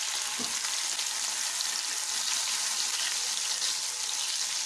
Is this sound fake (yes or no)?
no